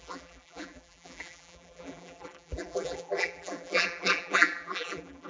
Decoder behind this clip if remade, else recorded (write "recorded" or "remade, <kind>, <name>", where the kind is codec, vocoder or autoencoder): remade, vocoder, BigVGAN v2